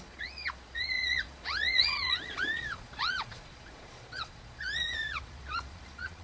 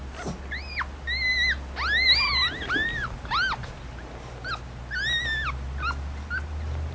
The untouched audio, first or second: second